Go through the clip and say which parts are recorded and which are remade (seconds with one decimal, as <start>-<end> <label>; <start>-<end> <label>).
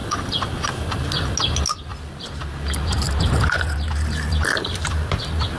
0.0-1.3 remade; 1.3-1.9 recorded; 1.9-5.6 remade